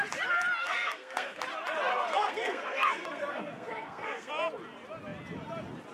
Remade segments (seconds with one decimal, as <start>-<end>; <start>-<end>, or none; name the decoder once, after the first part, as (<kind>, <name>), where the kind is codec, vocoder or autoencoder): 0.6-1.4 (codec, SNAC); 1.9-4.3